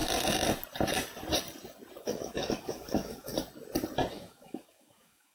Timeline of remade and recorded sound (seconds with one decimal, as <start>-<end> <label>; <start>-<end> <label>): 0.0-2.0 recorded; 2.0-3.3 remade; 3.3-4.1 recorded; 4.1-5.3 remade